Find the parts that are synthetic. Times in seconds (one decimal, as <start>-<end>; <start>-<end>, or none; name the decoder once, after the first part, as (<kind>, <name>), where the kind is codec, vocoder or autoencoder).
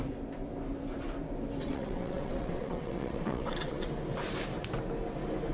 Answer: 1.6-3.9 (vocoder, WaveNeXt)